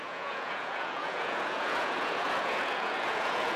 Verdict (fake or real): fake